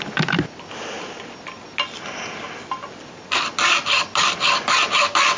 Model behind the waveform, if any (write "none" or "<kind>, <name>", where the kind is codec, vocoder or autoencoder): none